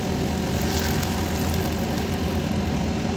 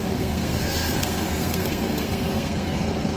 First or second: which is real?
first